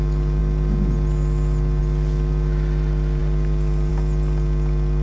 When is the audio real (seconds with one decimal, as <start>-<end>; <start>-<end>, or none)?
0.0-5.0